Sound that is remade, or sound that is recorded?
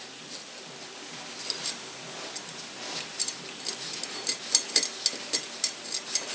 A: recorded